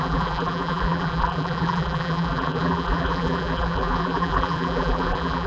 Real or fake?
fake